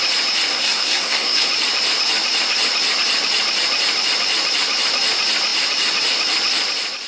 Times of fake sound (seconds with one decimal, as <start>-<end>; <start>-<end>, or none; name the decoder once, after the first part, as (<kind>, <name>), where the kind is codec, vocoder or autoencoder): 0.5-1.5 (codec, SNAC)